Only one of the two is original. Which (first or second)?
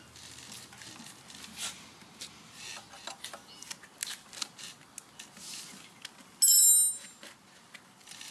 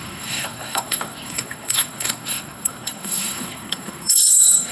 first